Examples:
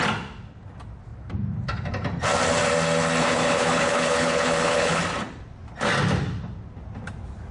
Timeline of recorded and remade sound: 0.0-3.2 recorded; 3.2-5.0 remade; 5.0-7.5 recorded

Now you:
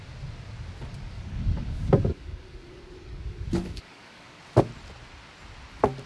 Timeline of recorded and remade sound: 0.0-0.9 recorded; 0.9-4.4 remade; 4.4-6.1 recorded

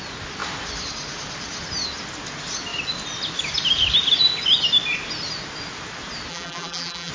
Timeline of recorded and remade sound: 0.0-6.3 recorded; 6.3-7.1 remade